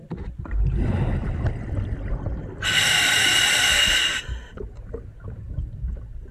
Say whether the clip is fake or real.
fake